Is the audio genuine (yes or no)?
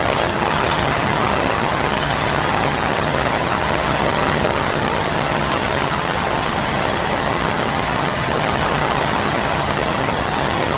no